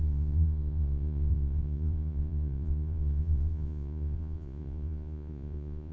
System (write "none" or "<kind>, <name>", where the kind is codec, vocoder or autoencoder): vocoder, Vocos